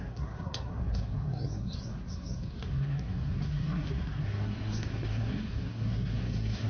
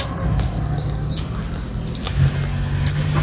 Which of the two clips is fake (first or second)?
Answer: first